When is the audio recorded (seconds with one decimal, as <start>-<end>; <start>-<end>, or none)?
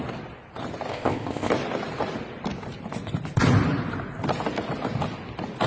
0.0-0.9; 1.5-5.7